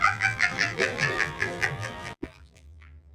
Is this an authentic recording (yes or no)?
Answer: no